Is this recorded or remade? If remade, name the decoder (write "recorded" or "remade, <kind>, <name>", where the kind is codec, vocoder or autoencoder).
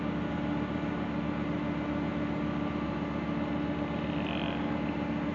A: recorded